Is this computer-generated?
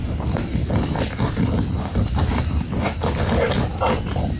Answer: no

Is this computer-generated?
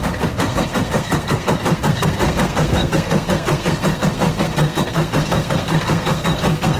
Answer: yes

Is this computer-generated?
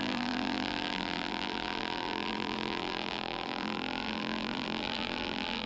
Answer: yes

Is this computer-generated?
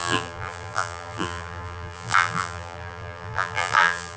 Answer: yes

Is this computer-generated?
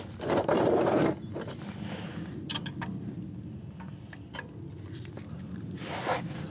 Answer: no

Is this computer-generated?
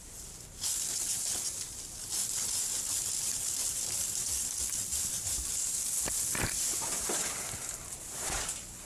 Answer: no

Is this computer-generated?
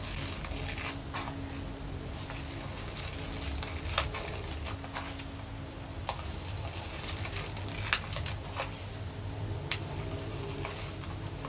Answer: no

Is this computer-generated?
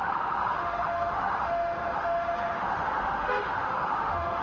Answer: yes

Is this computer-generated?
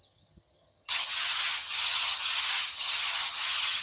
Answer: yes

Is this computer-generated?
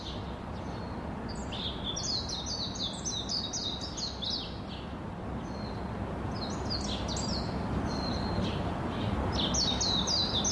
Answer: no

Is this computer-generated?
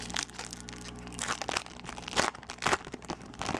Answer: no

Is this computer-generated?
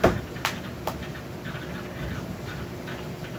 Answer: no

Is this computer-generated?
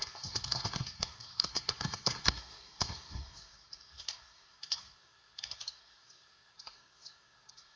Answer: yes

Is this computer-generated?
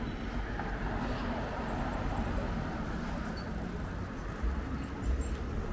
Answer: no